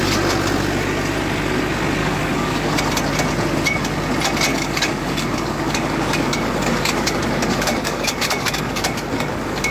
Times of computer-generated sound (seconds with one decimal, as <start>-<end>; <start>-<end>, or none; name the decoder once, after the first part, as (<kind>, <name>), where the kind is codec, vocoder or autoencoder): 2.0-2.8 (codec, DAC); 4.5-9.7